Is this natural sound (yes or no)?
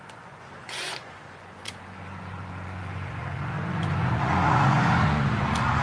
no